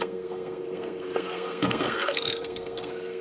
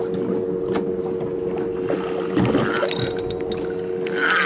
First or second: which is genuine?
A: second